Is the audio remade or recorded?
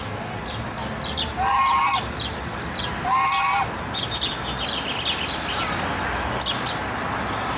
recorded